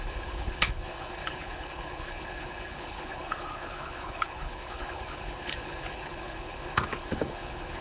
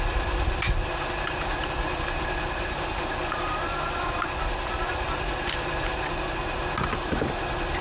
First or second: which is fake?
first